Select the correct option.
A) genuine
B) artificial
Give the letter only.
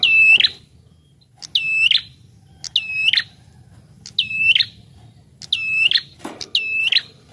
A